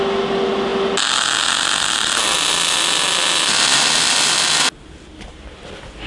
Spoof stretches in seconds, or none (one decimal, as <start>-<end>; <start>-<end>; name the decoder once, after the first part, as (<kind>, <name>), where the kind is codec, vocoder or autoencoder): none